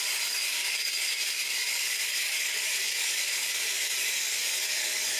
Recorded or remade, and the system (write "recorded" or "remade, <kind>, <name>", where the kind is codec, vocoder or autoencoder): remade, codec, DAC